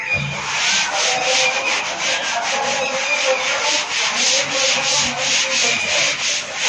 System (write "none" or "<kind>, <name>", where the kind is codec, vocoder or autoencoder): none